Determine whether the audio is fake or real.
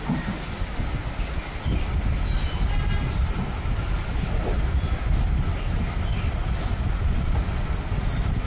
real